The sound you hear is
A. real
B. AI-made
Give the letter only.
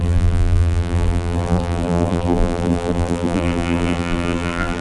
B